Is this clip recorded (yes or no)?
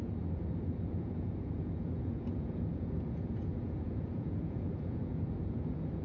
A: no